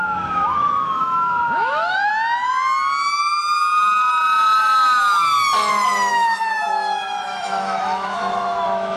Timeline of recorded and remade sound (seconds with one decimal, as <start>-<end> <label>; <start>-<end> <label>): 0.0-2.1 remade; 2.1-6.1 recorded; 6.1-9.0 remade